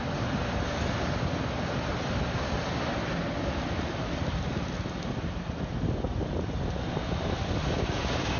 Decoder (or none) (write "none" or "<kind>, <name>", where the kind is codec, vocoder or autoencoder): none